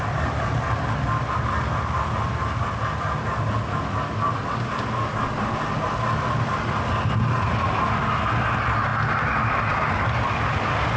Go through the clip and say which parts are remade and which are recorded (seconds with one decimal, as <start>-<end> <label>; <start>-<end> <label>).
0.0-11.0 recorded